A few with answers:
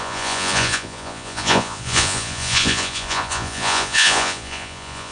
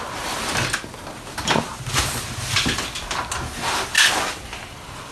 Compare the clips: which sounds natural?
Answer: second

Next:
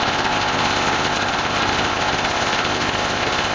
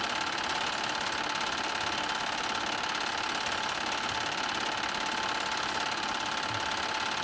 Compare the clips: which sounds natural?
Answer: second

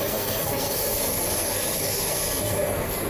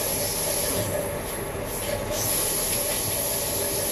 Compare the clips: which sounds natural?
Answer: second